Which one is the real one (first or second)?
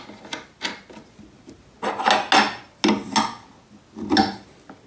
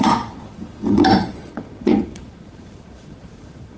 first